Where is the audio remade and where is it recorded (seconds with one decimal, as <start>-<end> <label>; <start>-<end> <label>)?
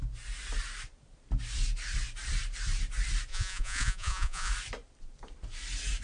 0.0-3.3 recorded; 3.3-4.5 remade; 4.5-6.0 recorded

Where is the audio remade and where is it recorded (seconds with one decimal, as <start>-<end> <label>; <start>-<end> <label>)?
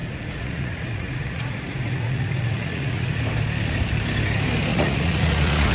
0.0-3.2 remade; 3.2-4.7 recorded; 4.7-5.7 remade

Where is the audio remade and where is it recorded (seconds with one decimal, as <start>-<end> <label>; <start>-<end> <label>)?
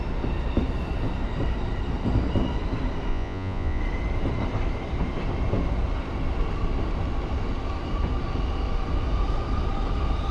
0.0-3.1 recorded; 3.1-3.8 remade; 3.8-10.3 recorded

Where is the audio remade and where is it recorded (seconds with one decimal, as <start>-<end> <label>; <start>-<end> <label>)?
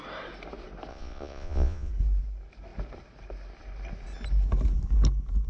0.0-0.9 recorded; 0.9-1.9 remade; 1.9-5.5 recorded